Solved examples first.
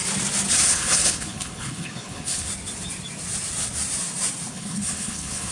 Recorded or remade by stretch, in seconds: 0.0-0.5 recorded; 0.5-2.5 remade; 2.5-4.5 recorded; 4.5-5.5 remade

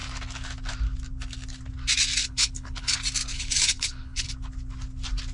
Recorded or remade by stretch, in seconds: 0.0-2.2 recorded; 2.2-2.9 remade; 2.9-3.3 recorded; 3.3-4.3 remade; 4.3-5.3 recorded

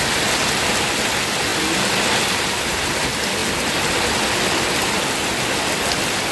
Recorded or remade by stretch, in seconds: 0.0-6.3 recorded

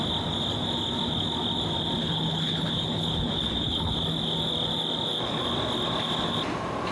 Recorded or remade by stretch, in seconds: 0.0-2.0 recorded; 2.0-3.9 remade; 3.9-6.9 recorded

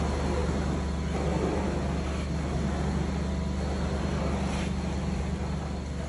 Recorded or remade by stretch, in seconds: 0.0-6.1 recorded

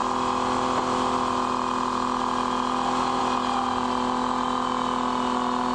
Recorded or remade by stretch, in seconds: 0.0-5.7 recorded